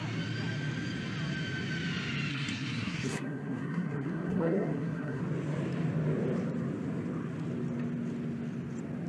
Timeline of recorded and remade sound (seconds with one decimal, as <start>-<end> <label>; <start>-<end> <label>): 0.0-2.3 recorded; 2.3-5.2 remade; 5.2-9.1 recorded